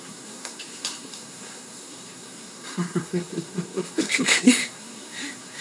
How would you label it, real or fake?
fake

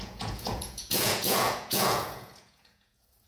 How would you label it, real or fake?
fake